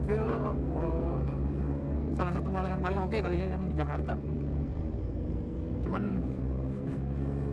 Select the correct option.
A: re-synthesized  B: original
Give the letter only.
A